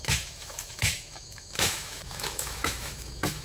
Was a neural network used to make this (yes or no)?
yes